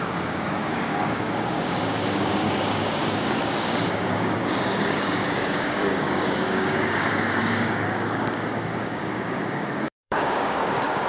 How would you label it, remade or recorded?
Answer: remade